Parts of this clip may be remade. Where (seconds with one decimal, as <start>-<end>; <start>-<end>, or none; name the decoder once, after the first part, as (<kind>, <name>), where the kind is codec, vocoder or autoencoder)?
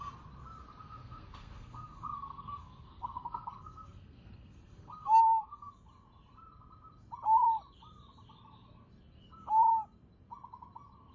0.8-5.7 (codec, SNAC)